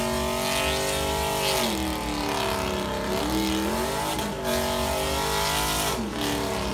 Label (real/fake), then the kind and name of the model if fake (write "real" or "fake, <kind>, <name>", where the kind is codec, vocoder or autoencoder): real